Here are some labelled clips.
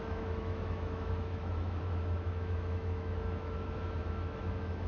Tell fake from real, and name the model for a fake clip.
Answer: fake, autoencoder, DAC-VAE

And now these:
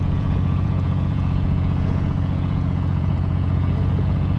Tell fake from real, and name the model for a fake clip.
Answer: fake, vocoder, Vocos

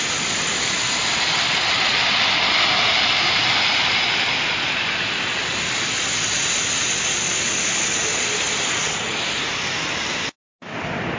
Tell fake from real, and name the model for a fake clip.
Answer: real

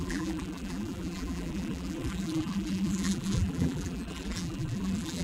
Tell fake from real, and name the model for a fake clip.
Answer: fake, vocoder, BigVGAN v2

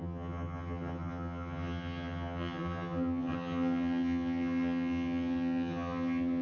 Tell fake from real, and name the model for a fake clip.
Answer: fake, vocoder, HiFi-GAN